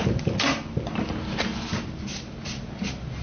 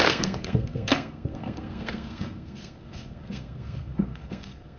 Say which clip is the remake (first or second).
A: second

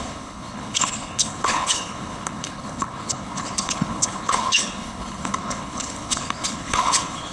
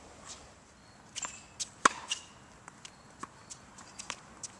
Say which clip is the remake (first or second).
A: first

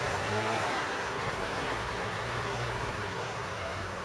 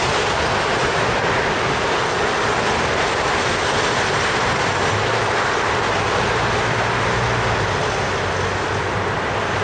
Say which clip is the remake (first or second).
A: first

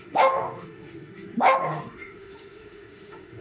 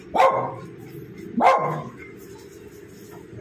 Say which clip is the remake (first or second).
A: first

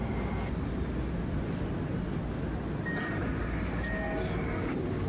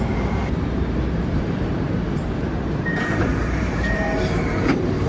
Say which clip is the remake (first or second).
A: second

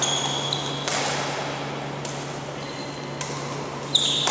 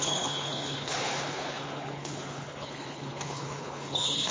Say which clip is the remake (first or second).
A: second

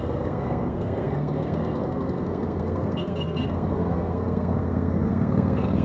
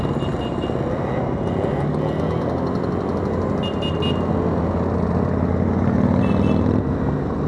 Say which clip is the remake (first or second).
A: first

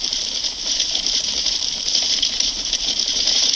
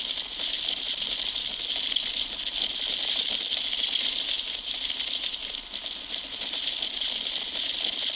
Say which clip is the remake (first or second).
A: first